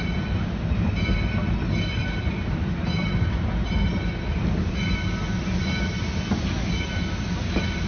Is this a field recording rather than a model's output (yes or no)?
yes